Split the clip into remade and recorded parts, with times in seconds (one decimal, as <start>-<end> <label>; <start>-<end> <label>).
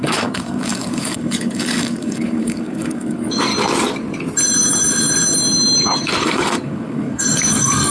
0.0-3.5 remade; 3.5-6.0 recorded; 6.0-7.9 remade